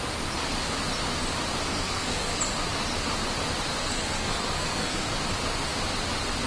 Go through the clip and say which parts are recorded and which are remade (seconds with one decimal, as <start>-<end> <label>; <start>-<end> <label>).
0.0-1.7 recorded; 1.7-2.4 remade; 2.4-3.8 recorded; 3.8-5.1 remade; 5.1-6.5 recorded